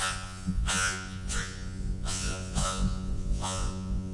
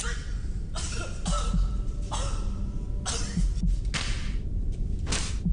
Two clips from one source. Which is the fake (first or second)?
first